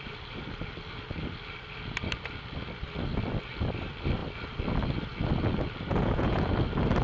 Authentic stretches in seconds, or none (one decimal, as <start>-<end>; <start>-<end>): 0.0-5.9; 6.5-7.0